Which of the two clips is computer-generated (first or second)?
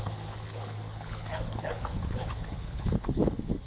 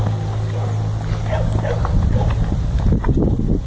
first